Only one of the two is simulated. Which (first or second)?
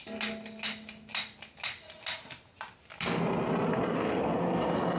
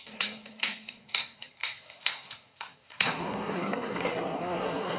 second